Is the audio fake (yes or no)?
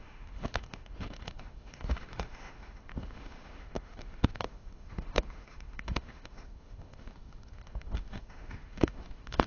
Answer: yes